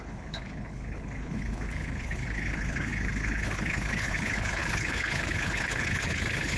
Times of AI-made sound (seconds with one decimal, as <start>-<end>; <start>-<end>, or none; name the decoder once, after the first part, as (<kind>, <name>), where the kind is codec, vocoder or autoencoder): 0.0-6.6 (codec, HILCodec)